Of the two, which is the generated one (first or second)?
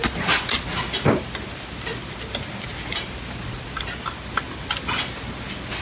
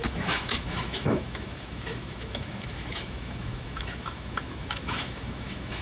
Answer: second